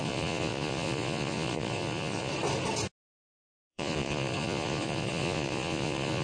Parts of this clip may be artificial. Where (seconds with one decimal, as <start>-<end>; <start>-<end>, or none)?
0.0-2.3; 3.7-6.2